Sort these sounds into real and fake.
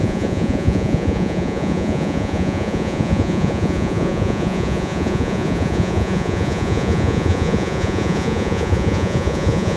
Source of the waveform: fake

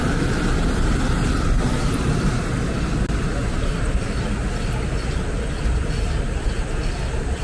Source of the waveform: real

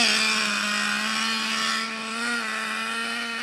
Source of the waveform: real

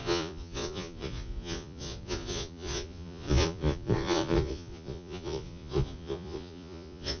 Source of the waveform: fake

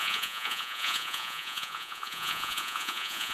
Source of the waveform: fake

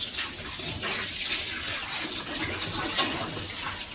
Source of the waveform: real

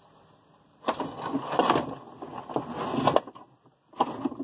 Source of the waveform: real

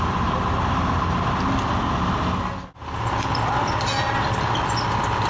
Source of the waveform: real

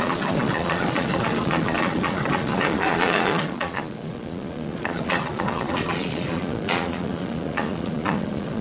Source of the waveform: fake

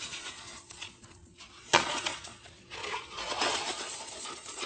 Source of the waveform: fake